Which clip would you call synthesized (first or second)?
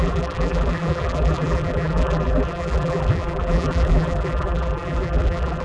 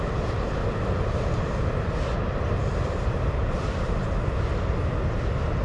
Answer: first